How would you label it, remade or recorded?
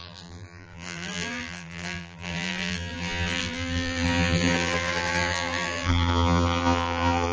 remade